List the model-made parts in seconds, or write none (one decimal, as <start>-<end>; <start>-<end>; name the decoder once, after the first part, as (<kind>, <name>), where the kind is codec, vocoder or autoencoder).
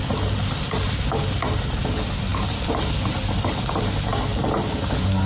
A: none